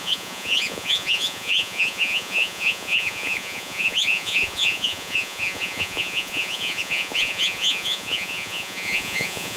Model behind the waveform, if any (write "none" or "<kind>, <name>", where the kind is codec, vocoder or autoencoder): vocoder, Vocos